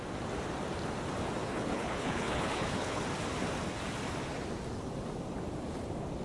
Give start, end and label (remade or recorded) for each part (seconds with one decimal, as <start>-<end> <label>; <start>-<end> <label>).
0.0-1.4 recorded; 1.4-3.0 remade; 3.0-6.2 recorded